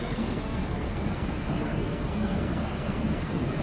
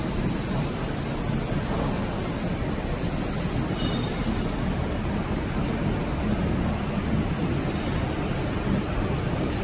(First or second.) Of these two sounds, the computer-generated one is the first